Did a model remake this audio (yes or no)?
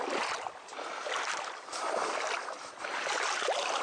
yes